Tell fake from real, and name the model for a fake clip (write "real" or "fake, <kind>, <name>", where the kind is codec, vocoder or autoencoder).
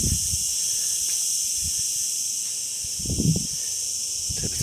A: real